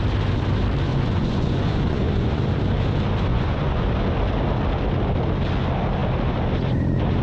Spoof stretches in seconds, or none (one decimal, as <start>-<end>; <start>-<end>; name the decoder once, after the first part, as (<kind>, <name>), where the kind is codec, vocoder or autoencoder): 0.9-2.4 (vocoder, Vocos); 3.3-3.9